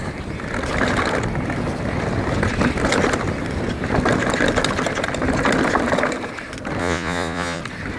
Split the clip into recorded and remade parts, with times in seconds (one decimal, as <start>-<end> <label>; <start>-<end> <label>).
0.0-6.8 recorded; 6.8-7.6 remade; 7.6-8.0 recorded